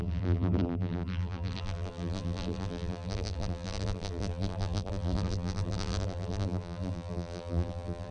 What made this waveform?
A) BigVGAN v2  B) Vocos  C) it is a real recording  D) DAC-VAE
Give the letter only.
A